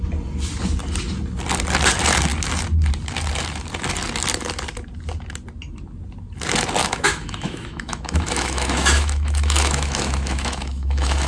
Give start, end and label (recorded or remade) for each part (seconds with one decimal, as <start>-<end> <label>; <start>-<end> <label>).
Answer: 0.0-6.8 recorded; 6.8-11.3 remade